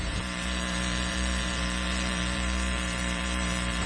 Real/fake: fake